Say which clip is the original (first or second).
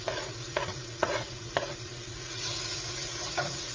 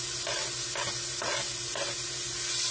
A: second